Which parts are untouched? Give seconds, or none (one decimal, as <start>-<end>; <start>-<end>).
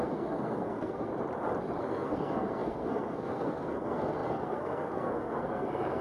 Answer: 1.1-1.8